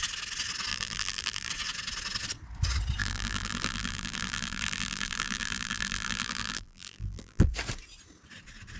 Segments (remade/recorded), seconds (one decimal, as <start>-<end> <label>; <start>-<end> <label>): 0.0-0.7 recorded; 0.7-1.5 remade; 1.5-3.0 recorded; 3.0-7.5 remade; 7.5-8.8 recorded